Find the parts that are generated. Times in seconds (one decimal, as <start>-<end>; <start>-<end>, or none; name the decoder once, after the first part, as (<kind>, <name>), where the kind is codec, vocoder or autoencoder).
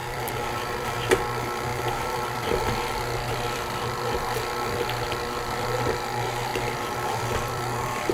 0.0-0.9 (vocoder, BigVGAN v2); 1.7-2.6; 6.5-8.1